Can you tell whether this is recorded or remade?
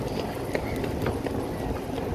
recorded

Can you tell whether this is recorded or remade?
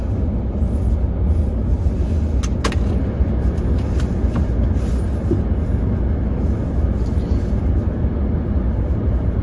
recorded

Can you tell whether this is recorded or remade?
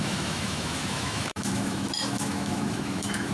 remade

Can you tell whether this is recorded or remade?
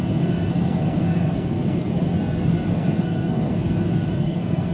remade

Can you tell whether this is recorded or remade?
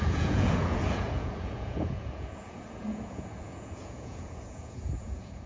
remade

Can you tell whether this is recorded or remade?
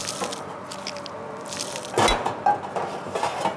recorded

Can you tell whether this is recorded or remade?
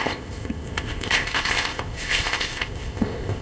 remade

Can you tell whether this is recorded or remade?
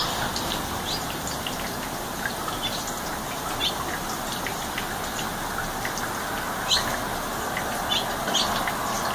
recorded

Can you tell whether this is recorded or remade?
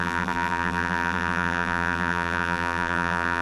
remade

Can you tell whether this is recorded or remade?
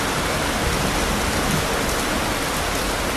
recorded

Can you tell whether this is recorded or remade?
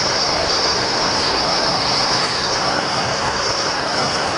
remade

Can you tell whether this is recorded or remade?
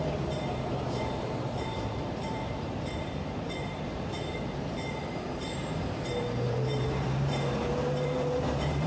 remade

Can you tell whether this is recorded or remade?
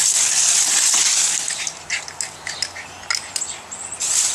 recorded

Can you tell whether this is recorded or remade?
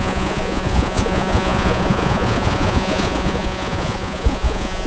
remade